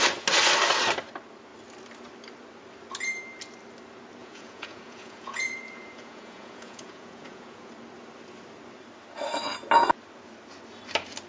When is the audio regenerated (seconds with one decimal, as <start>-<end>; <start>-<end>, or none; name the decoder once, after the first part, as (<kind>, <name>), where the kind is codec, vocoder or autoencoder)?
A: 4.2-7.7 (vocoder, Vocos)